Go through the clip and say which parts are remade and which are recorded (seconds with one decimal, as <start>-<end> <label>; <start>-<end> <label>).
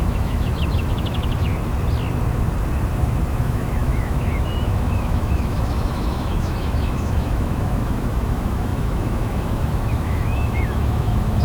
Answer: 0.0-1.5 remade; 1.5-3.3 recorded; 3.3-11.4 remade